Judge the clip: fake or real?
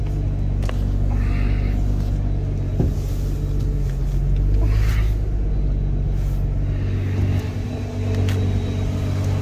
real